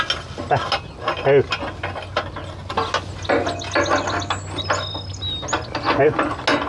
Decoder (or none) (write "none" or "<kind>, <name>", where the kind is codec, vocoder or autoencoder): none